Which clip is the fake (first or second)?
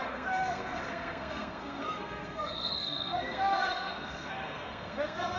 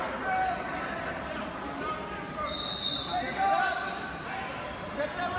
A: first